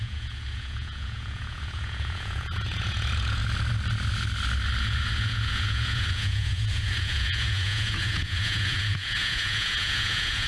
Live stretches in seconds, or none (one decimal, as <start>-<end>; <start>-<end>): 3.4-4.8